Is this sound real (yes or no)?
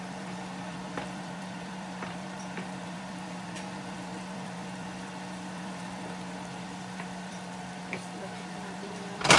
no